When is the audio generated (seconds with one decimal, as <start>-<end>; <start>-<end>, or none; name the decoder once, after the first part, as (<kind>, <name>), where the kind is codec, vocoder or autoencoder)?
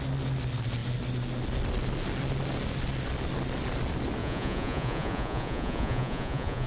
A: 4.2-6.7 (vocoder, Vocos)